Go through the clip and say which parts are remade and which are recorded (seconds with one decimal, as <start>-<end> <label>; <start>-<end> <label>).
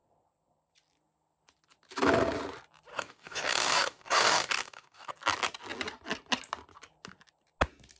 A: 0.0-2.9 recorded; 2.9-5.1 remade; 5.1-8.0 recorded